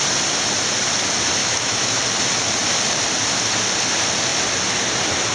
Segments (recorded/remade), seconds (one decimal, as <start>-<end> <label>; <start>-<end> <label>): 0.0-1.4 recorded; 1.4-2.0 remade; 2.0-5.3 recorded